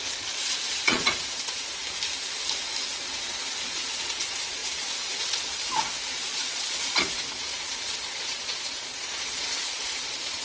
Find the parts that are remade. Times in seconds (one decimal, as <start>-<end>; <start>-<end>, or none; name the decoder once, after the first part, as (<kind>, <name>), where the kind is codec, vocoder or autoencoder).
0.0-1.8 (vocoder, Vocos); 2.8-10.4